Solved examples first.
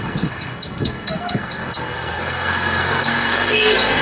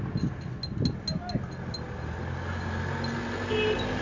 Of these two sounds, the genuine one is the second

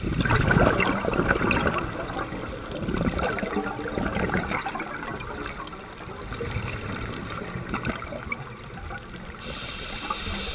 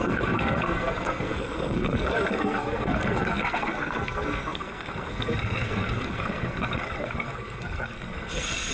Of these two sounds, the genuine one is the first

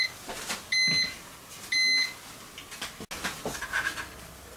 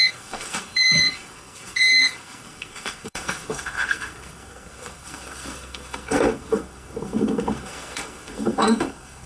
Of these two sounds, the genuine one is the first